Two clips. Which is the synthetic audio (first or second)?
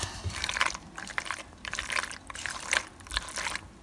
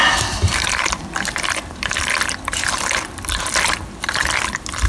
second